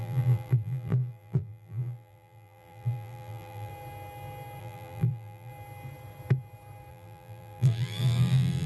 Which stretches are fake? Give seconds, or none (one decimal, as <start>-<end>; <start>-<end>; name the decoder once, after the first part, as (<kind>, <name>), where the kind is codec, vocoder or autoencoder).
0.0-3.7 (vocoder, BigVGAN v2); 4.6-5.5; 6.9-8.7